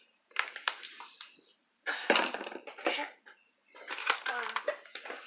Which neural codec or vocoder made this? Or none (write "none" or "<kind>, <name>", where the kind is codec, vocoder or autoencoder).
vocoder, BigVGAN v2